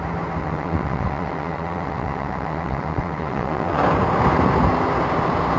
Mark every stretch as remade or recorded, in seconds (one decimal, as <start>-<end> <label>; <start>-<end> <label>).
0.0-0.4 recorded; 0.4-3.8 remade; 3.8-5.6 recorded